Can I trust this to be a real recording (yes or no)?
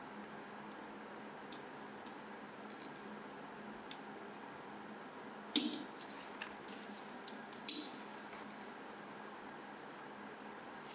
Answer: yes